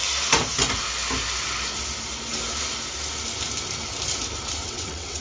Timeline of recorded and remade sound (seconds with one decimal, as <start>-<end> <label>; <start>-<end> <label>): 0.0-4.6 recorded; 4.6-5.2 remade